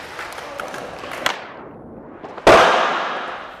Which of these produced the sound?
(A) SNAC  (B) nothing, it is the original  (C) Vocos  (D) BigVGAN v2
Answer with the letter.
B